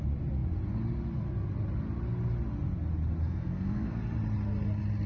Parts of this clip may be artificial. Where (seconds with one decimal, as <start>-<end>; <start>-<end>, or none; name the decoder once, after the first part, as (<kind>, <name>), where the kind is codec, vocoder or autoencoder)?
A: 3.2-4.0 (codec, SNAC)